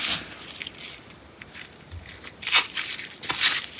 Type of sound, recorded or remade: recorded